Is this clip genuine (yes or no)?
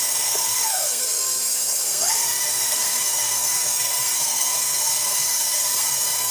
no